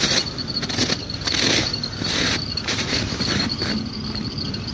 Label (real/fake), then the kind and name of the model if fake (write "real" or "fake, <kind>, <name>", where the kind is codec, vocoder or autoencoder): real